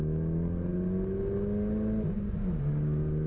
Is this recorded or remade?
recorded